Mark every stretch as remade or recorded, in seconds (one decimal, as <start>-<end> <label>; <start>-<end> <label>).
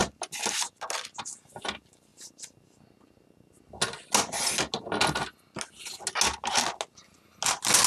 0.0-7.9 recorded